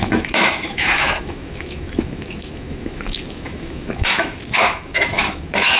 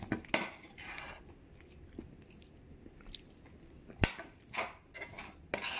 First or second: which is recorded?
second